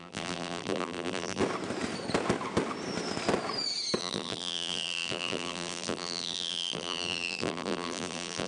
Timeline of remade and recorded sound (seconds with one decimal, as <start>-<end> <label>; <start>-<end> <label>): 0.0-1.4 remade; 1.4-4.0 recorded; 4.0-8.5 remade